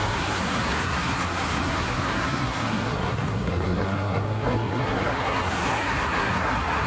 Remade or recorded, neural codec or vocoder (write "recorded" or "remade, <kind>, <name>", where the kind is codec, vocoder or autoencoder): remade, codec, SNAC